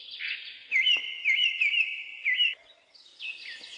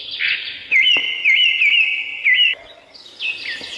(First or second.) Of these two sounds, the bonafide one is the second